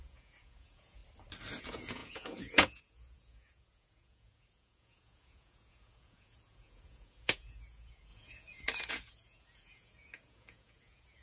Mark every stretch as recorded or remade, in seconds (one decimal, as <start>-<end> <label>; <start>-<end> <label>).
0.0-1.0 remade; 1.0-1.6 recorded; 1.6-11.2 remade